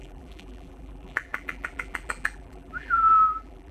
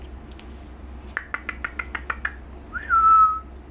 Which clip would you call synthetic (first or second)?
first